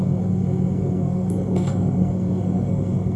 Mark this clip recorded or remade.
remade